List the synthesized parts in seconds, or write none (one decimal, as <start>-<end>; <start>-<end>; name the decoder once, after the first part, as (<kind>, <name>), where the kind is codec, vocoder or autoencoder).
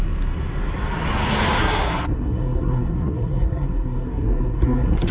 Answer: 1.6-5.1 (codec, SNAC)